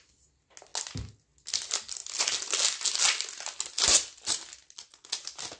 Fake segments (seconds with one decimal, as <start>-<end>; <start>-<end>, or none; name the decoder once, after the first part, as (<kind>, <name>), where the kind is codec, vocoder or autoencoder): none